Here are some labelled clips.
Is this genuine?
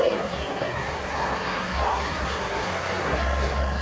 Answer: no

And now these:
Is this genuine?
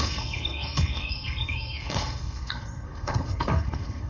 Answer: no